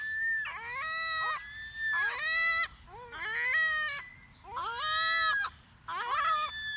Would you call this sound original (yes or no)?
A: yes